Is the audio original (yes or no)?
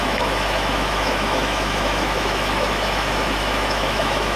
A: no